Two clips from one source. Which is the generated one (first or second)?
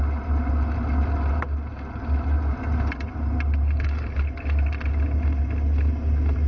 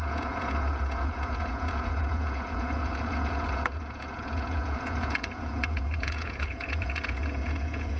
second